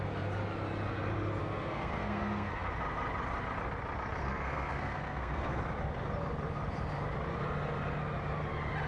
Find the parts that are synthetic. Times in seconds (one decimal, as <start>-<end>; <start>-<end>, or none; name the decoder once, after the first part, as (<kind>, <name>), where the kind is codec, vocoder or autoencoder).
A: 1.4-2.7 (codec, SNAC); 4.2-5.6